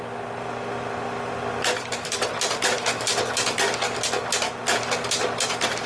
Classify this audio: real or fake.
real